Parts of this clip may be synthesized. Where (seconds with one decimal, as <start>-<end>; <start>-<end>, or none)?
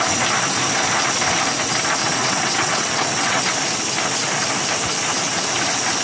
2.0-3.4